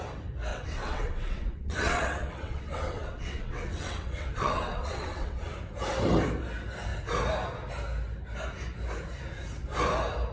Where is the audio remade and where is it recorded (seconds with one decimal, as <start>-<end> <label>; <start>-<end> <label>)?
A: 0.0-0.5 recorded; 0.5-5.5 remade; 5.5-10.3 recorded